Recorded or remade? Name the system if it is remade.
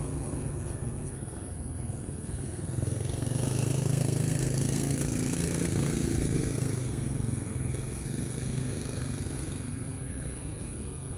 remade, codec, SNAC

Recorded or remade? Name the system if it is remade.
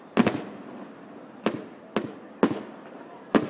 recorded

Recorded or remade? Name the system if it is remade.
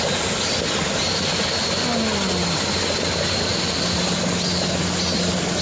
recorded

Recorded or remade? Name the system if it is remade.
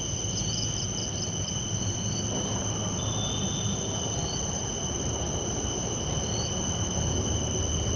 recorded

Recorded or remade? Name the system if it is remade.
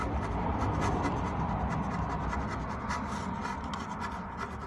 recorded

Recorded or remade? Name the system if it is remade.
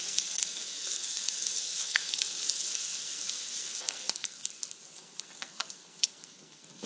remade, codec, SNAC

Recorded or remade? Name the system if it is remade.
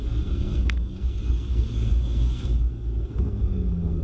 remade, codec, SNAC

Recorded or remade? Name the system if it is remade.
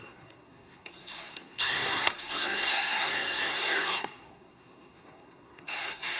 remade, codec, SNAC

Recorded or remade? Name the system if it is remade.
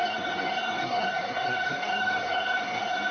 remade, codec, SNAC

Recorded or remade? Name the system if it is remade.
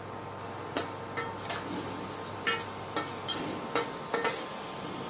recorded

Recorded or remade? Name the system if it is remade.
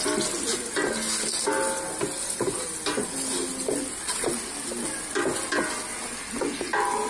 recorded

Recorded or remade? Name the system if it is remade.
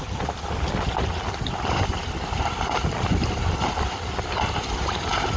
recorded